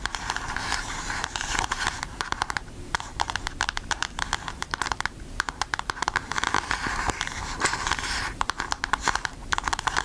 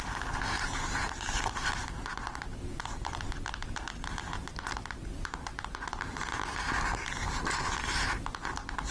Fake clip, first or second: first